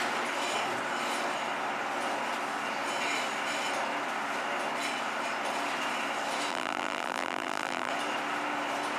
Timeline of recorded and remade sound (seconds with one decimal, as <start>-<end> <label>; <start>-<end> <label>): 0.0-6.5 recorded; 6.5-7.9 remade; 7.9-9.0 recorded